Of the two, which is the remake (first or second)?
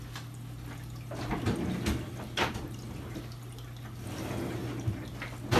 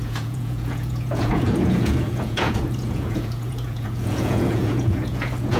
second